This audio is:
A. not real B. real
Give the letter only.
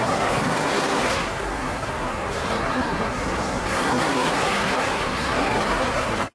A